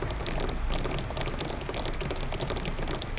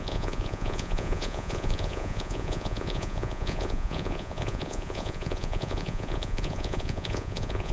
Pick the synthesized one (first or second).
second